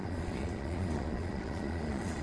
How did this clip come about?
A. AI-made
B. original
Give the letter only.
A